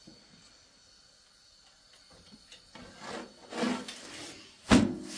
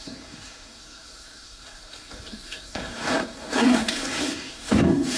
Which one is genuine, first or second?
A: first